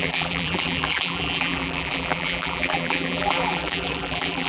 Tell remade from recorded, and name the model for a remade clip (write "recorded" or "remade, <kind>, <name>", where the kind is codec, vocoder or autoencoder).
remade, vocoder, BigVGAN v2